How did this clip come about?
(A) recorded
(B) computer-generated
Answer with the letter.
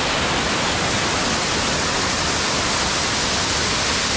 A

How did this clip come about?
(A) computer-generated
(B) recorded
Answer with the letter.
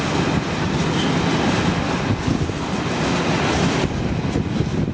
B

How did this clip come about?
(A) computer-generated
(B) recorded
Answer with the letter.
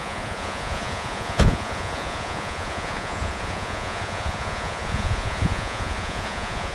A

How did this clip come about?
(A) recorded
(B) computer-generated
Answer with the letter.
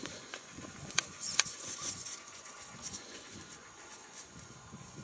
B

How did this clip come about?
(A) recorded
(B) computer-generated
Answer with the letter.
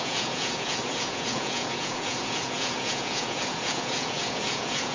B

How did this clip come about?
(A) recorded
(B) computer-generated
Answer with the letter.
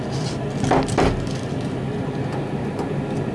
A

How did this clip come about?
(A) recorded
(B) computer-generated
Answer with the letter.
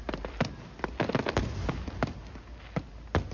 A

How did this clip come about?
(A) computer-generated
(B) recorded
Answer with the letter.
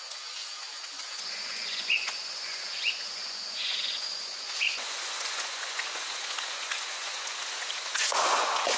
A